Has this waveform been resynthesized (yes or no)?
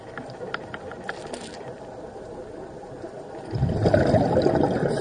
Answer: no